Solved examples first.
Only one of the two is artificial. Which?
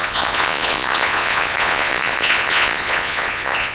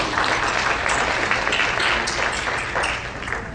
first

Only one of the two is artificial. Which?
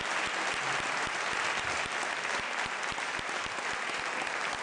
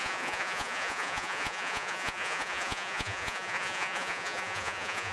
second